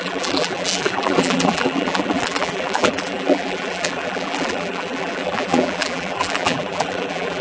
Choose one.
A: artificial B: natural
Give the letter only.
A